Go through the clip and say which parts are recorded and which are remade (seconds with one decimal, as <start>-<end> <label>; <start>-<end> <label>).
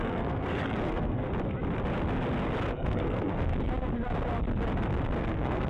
0.0-1.2 remade; 1.2-2.7 recorded; 2.7-3.5 remade; 3.5-5.2 recorded; 5.2-5.7 remade